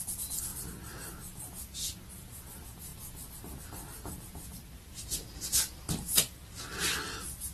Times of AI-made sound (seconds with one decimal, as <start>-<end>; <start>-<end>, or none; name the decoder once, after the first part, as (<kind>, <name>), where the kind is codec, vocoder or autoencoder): 0.5-1.6 (vocoder, BigVGAN v2); 3.9-4.8